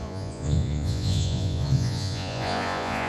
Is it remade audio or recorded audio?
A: remade